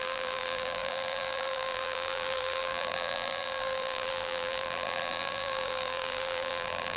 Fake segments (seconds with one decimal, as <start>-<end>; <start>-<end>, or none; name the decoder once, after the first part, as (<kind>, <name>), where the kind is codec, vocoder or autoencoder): 0.0-7.0 (vocoder, BigVGAN v2)